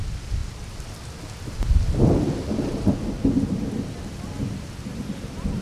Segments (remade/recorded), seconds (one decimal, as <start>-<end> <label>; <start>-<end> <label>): 0.0-5.6 recorded